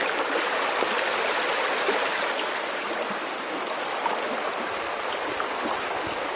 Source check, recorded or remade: recorded